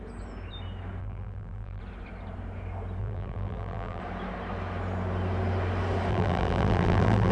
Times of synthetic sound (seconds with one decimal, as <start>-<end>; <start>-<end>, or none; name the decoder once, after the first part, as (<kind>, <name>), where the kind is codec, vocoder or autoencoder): 1.0-1.8 (vocoder, BigVGAN v2); 3.0-4.0; 6.1-7.3